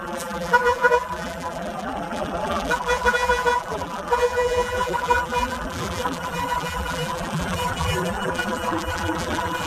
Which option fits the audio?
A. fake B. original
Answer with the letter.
A